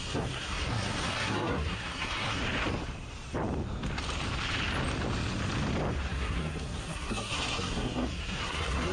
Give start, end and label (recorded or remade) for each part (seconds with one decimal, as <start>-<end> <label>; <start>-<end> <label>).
0.0-2.4 remade; 2.4-6.1 recorded; 6.1-8.9 remade